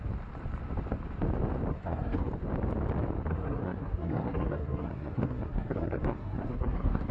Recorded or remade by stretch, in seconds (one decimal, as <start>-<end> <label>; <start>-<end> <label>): 0.0-1.7 recorded; 1.7-2.3 remade; 2.3-3.3 recorded; 3.3-7.1 remade